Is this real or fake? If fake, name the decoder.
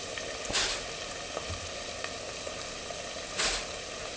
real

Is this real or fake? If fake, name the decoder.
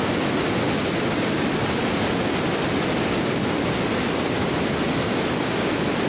real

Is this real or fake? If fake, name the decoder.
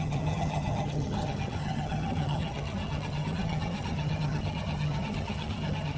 fake, vocoder, HiFi-GAN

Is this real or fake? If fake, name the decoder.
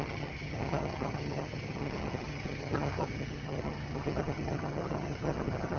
fake, vocoder, HiFi-GAN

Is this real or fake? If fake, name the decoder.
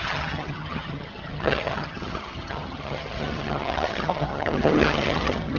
fake, vocoder, HiFi-GAN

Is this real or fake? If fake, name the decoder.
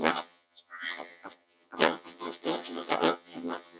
fake, vocoder, HiFi-GAN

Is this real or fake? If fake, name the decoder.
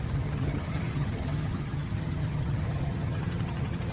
fake, vocoder, HiFi-GAN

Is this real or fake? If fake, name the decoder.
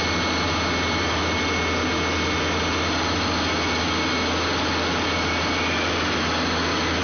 real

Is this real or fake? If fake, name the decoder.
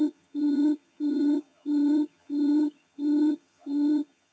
fake, vocoder, HiFi-GAN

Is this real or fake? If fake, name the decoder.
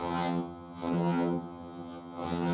fake, vocoder, HiFi-GAN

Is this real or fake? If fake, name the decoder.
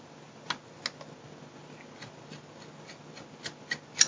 real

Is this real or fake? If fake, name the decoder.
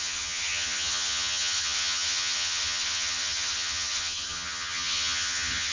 fake, vocoder, HiFi-GAN